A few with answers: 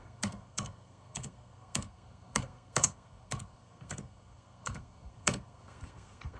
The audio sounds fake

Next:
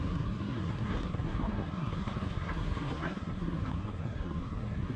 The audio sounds fake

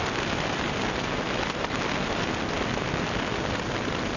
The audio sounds real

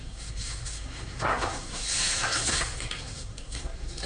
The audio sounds fake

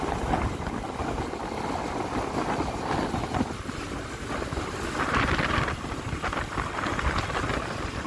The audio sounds real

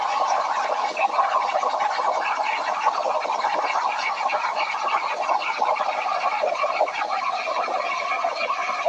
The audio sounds real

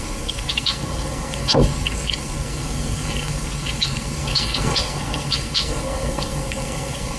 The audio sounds fake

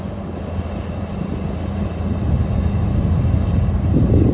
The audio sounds real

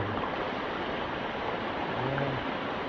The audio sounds real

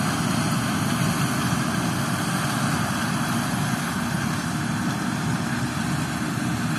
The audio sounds real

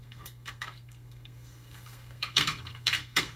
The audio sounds fake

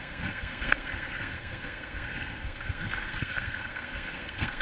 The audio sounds fake